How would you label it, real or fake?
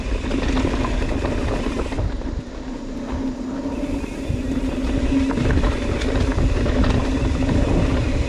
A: real